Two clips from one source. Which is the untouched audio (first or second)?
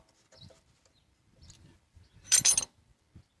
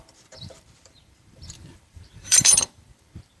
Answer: first